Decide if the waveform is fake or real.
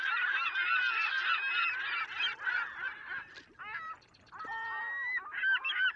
real